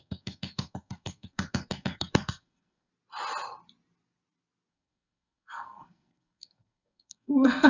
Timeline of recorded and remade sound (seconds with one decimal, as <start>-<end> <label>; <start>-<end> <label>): 0.0-2.9 remade; 2.9-4.7 recorded; 4.7-7.7 remade